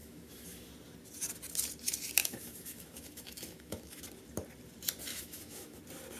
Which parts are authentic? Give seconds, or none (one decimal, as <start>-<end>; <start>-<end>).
0.7-2.2; 4.0-5.1; 5.8-6.2